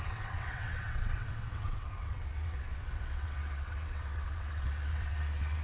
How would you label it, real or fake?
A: fake